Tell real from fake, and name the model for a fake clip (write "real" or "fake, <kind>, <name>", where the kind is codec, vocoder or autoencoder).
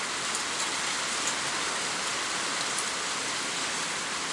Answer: real